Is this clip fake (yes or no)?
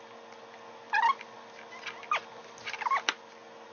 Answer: no